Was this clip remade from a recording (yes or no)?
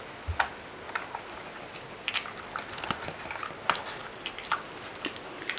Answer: no